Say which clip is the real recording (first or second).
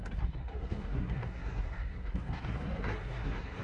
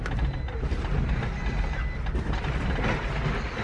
second